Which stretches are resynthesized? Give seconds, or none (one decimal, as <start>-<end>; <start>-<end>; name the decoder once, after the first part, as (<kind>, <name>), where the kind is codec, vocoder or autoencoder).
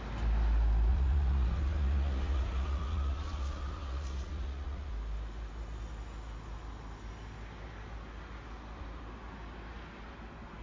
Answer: 0.9-4.9 (vocoder, Vocos)